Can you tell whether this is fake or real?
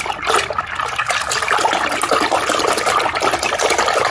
real